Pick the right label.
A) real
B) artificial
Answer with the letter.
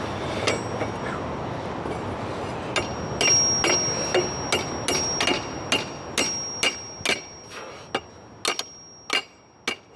A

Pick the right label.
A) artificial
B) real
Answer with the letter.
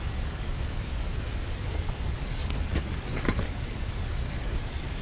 A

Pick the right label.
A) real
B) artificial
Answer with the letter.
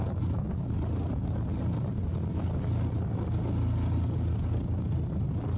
A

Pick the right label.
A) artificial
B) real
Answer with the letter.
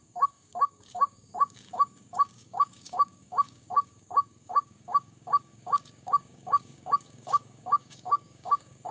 A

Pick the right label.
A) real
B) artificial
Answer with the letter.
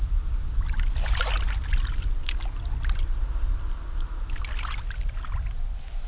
A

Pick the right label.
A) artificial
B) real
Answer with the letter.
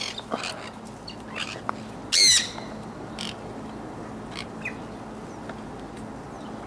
B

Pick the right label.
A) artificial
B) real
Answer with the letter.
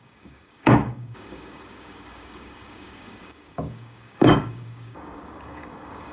A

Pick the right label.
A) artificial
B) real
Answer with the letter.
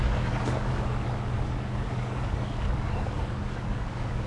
A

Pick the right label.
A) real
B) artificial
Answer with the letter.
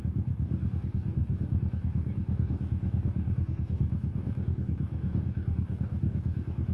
B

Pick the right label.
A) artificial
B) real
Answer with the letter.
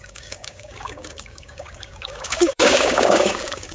A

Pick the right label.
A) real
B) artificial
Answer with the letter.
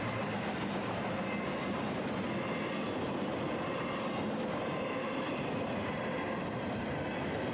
A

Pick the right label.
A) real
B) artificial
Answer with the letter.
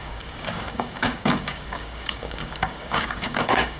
B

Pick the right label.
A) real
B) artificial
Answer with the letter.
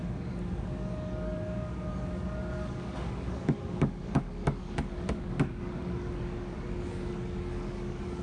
B